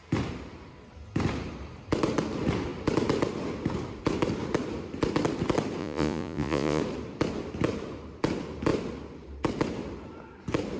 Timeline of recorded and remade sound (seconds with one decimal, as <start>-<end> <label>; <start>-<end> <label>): 0.0-5.8 recorded; 5.8-6.8 remade; 6.8-10.8 recorded